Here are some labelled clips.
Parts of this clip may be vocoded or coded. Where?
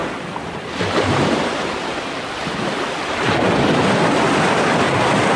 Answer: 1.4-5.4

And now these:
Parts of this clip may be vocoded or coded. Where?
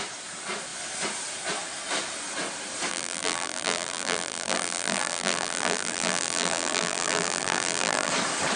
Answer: 2.9-8.1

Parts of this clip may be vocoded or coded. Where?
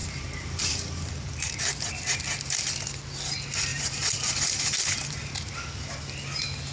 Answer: 0.0-1.6; 3.7-5.4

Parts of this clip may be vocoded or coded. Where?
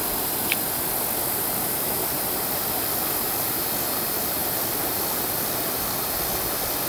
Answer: none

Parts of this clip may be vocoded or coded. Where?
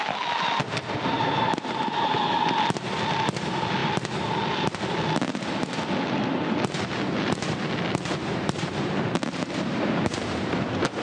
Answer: 8.2-10.6